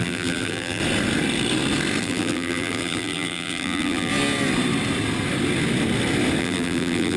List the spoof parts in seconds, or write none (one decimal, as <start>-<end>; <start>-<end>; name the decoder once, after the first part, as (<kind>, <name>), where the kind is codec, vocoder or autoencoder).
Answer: 0.0-0.8 (vocoder, BigVGAN v2); 2.0-4.1; 6.4-7.2